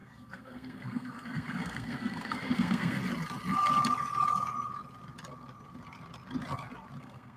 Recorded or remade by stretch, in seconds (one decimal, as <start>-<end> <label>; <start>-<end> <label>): 0.0-3.0 remade; 3.0-7.0 recorded; 7.0-7.4 remade